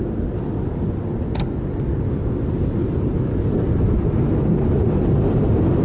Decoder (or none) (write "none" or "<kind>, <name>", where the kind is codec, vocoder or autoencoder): none